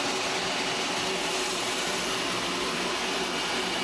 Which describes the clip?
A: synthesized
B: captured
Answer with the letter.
B